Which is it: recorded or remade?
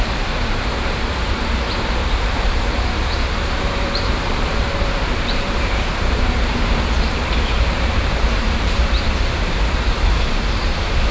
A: remade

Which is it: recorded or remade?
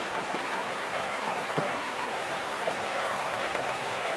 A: remade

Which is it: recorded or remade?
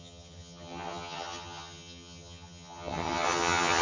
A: remade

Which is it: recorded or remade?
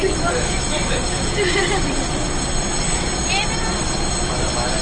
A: recorded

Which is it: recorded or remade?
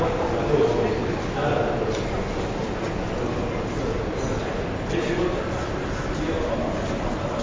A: recorded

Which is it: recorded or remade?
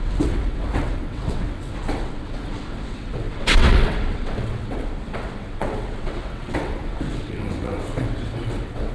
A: remade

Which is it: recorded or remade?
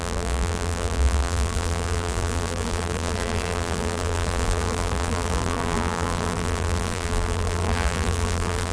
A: remade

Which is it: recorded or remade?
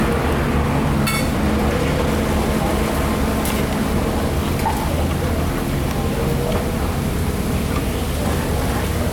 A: recorded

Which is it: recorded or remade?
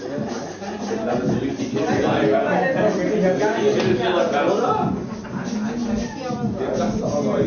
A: recorded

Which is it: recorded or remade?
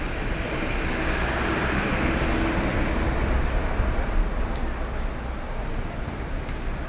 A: recorded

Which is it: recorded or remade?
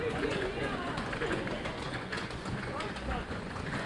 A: remade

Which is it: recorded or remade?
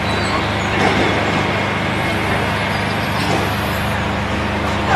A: recorded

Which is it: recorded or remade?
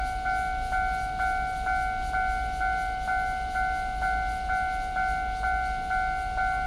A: recorded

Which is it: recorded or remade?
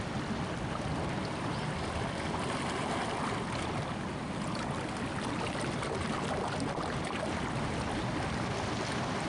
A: recorded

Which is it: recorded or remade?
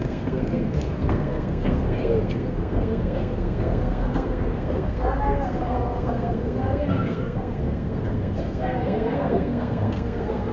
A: remade